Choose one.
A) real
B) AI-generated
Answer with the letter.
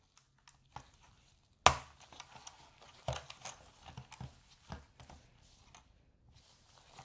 A